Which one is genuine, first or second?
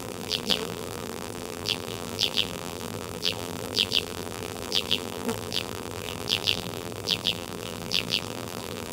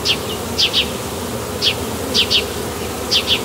second